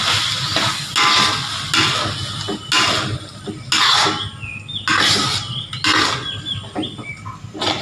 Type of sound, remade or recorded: recorded